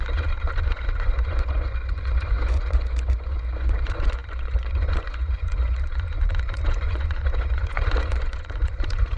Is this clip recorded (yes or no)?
no